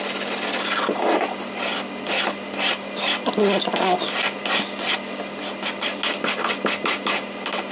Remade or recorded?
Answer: recorded